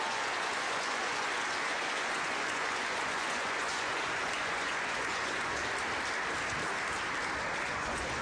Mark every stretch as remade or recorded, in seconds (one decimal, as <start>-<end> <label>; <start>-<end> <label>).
0.0-5.6 remade; 5.6-7.6 recorded; 7.6-8.2 remade